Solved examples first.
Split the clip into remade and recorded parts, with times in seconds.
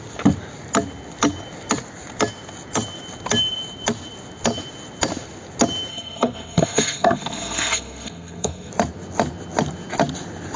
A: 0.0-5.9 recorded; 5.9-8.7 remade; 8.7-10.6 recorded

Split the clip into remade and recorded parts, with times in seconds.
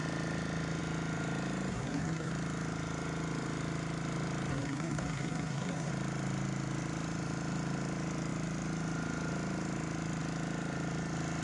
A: 0.0-1.7 recorded; 1.7-2.3 remade; 2.3-4.5 recorded; 4.5-5.9 remade; 5.9-11.4 recorded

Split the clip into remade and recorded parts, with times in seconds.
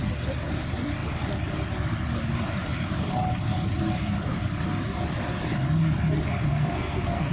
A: 0.0-6.5 recorded; 6.5-7.3 remade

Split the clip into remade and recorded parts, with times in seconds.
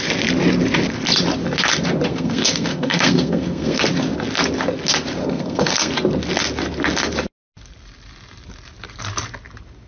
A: 0.0-2.1 recorded; 2.1-3.8 remade; 3.8-5.2 recorded; 5.2-5.9 remade; 5.9-9.9 recorded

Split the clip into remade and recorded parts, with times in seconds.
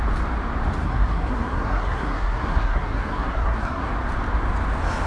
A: 0.0-0.8 recorded; 0.8-3.9 remade; 3.9-5.1 recorded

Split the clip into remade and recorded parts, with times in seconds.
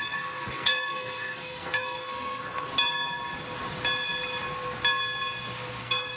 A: 0.0-2.7 remade; 2.7-5.8 recorded; 5.8-6.2 remade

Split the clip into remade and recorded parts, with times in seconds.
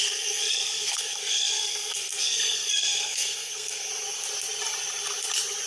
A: 0.0-3.9 remade; 3.9-5.7 recorded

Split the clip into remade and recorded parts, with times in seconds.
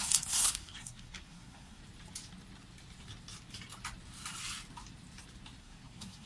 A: 0.0-1.8 remade; 1.8-5.6 recorded; 5.6-6.3 remade